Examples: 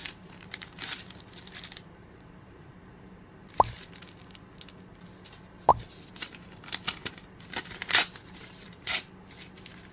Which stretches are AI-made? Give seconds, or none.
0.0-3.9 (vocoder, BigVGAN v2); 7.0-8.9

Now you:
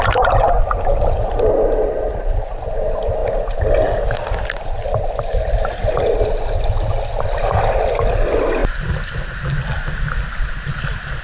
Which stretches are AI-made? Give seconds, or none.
none

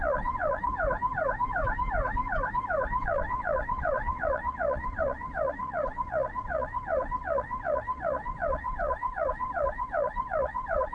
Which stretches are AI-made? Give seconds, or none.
0.0-0.7 (vocoder, WaveNeXt); 3.0-10.9

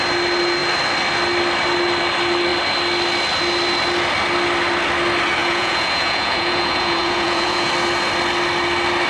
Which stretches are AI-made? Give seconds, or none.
5.4-7.7 (vocoder, Vocos)